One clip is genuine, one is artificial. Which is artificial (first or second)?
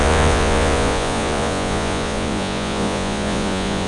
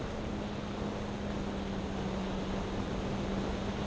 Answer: first